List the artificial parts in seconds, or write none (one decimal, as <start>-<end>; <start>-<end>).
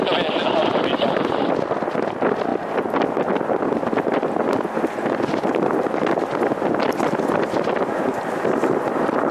none